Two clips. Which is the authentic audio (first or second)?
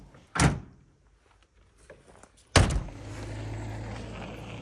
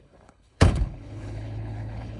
first